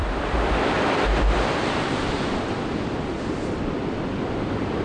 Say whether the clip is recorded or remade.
remade